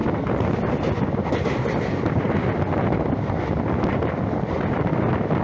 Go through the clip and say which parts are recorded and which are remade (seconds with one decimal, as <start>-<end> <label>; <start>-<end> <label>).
0.0-5.4 recorded